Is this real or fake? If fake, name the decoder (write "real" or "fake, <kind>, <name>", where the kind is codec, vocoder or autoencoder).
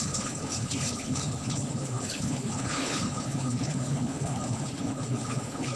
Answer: fake, codec, HILCodec